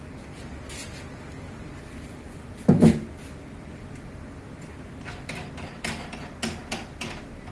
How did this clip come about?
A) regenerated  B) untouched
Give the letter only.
B